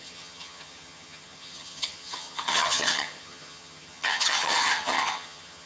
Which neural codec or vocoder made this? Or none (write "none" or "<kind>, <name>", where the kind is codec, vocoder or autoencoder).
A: vocoder, HiFi-GAN